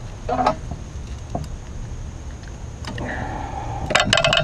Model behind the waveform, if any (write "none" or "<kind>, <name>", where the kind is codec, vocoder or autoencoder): none